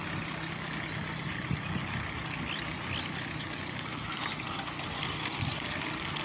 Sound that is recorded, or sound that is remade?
recorded